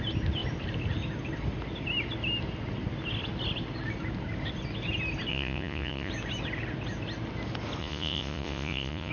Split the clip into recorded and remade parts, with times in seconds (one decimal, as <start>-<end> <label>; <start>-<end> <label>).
0.0-5.3 recorded; 5.3-6.1 remade; 6.1-7.8 recorded; 7.8-9.1 remade